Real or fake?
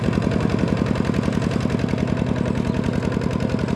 real